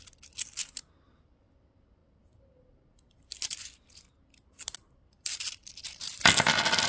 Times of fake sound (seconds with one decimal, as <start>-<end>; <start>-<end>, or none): none